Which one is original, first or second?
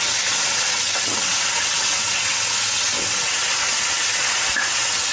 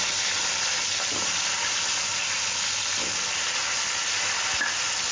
second